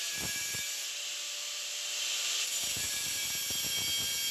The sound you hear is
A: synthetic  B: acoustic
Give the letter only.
B